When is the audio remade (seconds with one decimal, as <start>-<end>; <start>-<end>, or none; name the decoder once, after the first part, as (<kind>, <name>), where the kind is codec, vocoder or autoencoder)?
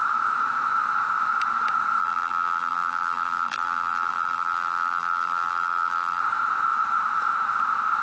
2.0-6.2 (vocoder, BigVGAN v2)